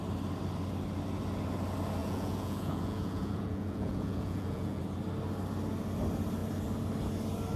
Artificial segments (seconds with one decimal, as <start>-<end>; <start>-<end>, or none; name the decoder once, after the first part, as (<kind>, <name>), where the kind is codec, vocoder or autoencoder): 2.0-4.8 (vocoder, Vocos)